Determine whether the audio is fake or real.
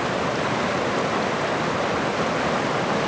real